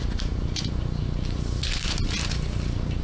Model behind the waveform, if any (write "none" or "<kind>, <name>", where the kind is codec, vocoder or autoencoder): none